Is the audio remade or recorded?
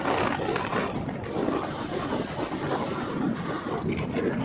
recorded